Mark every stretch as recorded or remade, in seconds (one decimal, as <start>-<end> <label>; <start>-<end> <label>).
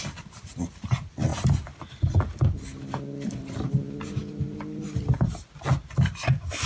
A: 0.0-6.7 recorded